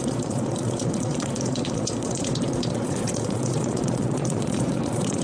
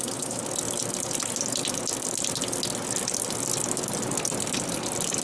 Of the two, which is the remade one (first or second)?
first